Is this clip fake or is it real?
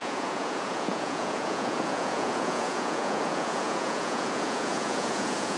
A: fake